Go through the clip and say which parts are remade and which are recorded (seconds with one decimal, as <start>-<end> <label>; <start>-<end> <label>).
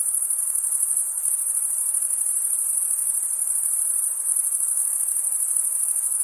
0.0-0.4 recorded; 0.4-1.3 remade; 1.3-4.3 recorded; 4.3-6.2 remade